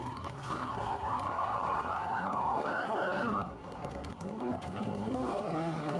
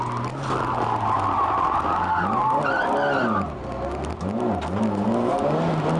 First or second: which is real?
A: second